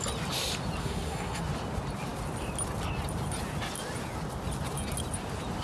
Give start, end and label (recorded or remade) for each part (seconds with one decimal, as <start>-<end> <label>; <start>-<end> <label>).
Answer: 0.0-0.8 recorded; 0.8-1.4 remade; 1.4-5.6 recorded